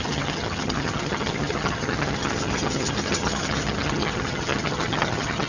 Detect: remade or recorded remade